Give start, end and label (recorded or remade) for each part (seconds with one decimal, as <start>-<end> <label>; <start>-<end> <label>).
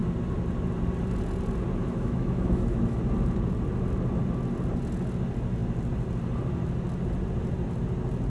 0.0-1.8 recorded; 1.8-3.0 remade; 3.0-8.3 recorded